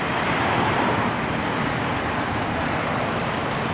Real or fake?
real